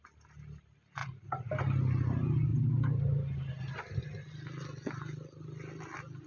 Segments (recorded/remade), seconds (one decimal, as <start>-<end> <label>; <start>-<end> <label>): 0.0-1.0 recorded; 1.0-1.5 remade; 1.5-6.3 recorded